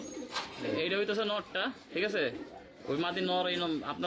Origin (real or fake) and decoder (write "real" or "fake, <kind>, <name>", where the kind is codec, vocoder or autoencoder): real